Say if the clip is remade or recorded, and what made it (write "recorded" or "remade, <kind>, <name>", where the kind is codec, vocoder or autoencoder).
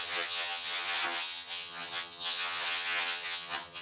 remade, vocoder, HiFi-GAN